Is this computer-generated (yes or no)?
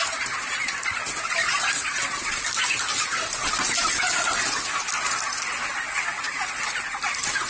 no